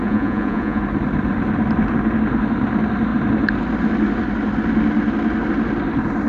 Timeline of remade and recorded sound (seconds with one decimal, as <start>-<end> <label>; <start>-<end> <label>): 0.0-0.8 remade; 0.8-6.3 recorded